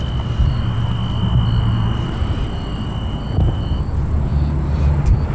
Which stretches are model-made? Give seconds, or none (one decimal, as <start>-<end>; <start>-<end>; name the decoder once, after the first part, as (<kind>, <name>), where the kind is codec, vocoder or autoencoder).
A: 4.3-4.8 (vocoder, BigVGAN v2)